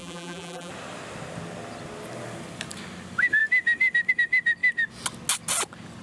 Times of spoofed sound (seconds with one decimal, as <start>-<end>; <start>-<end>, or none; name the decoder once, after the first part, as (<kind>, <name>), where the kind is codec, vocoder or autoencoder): 0.0-0.7 (vocoder, BigVGAN v2)